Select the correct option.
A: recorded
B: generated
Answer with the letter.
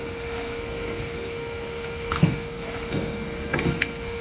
B